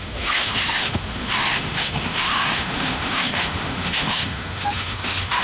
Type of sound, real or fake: fake